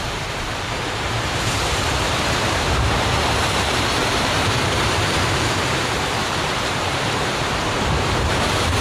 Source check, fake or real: fake